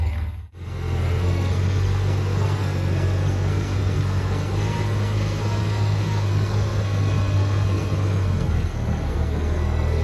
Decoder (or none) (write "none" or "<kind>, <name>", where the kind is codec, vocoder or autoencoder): codec, SNAC